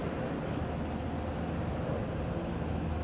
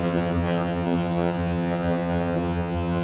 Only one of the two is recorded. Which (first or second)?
first